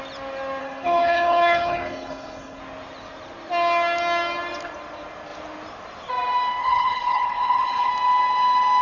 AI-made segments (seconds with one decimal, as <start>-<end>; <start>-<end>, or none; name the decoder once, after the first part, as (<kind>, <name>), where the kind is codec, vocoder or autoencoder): 0.6-2.6 (codec, HILCodec); 6.6-7.9